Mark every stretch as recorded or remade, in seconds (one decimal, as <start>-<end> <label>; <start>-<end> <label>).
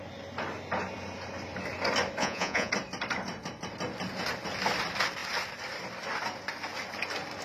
0.0-2.2 recorded; 2.2-2.7 remade; 2.7-7.4 recorded